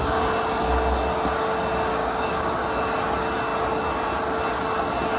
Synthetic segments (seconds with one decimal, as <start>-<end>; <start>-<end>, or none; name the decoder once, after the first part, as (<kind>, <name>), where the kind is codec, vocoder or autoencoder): 2.0-2.7 (codec, DAC)